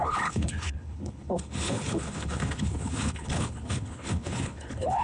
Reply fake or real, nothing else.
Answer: fake